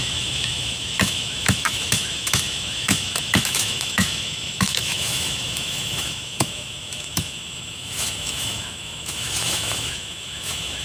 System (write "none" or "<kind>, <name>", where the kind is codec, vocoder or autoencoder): autoencoder, DAC-VAE